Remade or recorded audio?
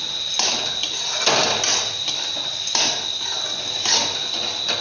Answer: recorded